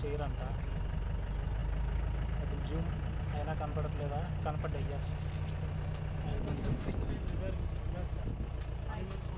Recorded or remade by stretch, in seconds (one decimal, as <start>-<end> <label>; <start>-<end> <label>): 0.0-6.3 recorded; 6.3-6.9 remade; 6.9-9.4 recorded